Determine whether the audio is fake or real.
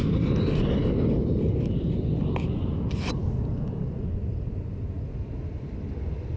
real